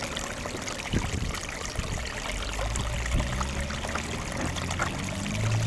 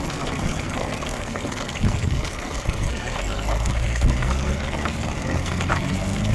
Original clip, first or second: first